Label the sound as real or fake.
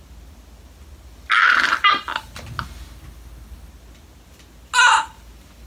real